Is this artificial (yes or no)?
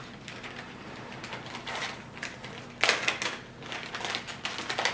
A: no